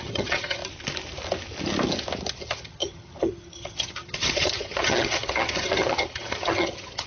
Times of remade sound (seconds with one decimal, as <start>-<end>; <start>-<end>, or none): 0.0-0.6; 2.3-7.1